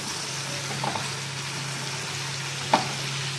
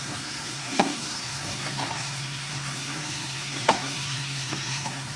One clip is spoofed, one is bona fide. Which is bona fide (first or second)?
first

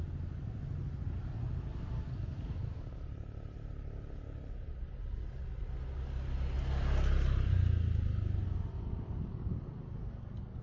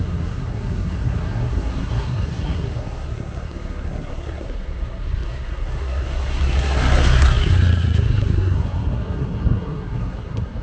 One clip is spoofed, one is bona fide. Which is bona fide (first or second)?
first